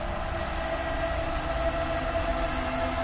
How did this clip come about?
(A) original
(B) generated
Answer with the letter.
A